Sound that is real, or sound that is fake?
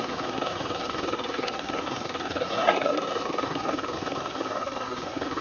fake